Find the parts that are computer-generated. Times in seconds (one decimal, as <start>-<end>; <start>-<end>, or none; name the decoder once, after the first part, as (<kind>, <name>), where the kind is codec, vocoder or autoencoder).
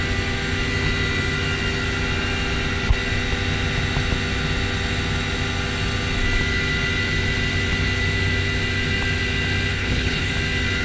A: 9.7-10.3 (codec, HILCodec)